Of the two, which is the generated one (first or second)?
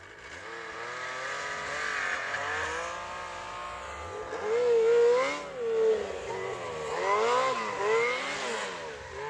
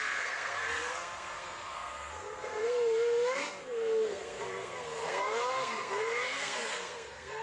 second